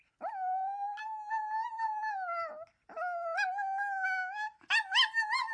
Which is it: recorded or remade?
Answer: recorded